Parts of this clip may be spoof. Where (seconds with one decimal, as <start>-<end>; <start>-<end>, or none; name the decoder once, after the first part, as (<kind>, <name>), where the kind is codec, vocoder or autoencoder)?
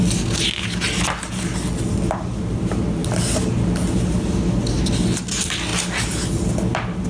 none